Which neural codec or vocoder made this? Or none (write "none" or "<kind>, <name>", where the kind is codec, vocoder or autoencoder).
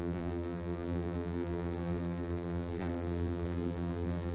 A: vocoder, BigVGAN v2